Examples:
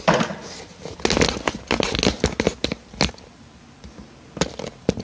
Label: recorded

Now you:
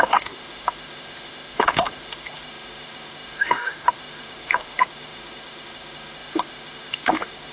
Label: remade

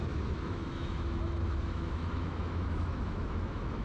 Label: remade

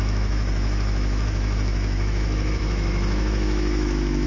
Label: remade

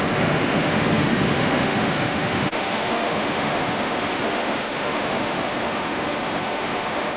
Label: remade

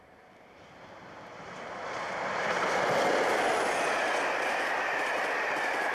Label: recorded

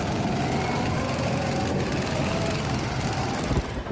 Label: recorded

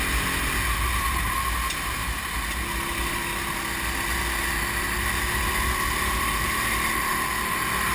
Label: recorded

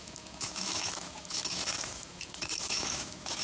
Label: remade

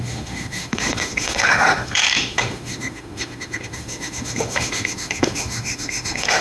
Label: remade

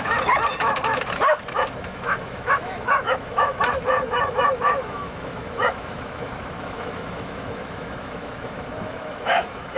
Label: remade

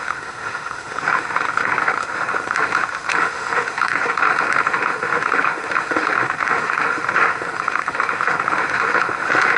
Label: remade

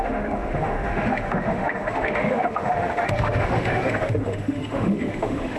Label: remade